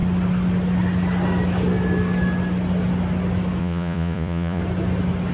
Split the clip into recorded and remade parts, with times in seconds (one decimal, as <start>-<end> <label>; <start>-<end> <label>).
0.0-3.6 recorded; 3.6-4.6 remade; 4.6-5.3 recorded